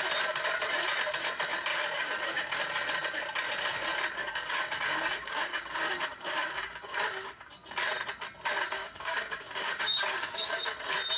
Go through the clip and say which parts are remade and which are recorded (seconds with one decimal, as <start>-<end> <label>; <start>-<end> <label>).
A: 0.0-1.7 recorded; 1.7-2.6 remade; 2.6-4.2 recorded; 4.2-7.5 remade; 7.5-8.8 recorded; 8.8-10.7 remade; 10.7-11.2 recorded